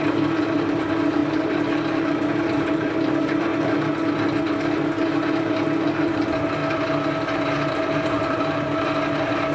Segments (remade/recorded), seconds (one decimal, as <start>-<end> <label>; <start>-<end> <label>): 0.0-3.5 remade; 3.5-4.6 recorded; 4.6-6.6 remade; 6.6-7.7 recorded; 7.7-9.5 remade